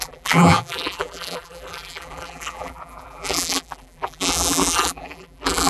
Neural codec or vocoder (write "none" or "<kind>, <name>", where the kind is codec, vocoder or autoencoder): vocoder, BigVGAN v2